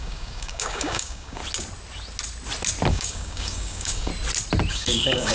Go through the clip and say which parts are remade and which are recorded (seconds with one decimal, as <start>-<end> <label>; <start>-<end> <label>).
0.0-1.4 remade; 1.4-2.9 recorded; 2.9-4.1 remade; 4.1-4.7 recorded; 4.7-5.3 remade